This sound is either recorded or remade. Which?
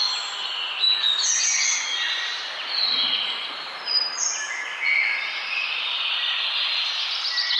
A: recorded